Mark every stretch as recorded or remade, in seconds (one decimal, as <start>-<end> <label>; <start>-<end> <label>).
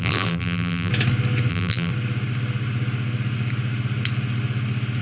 0.0-0.9 remade; 0.9-1.5 recorded; 1.5-1.9 remade; 1.9-5.0 recorded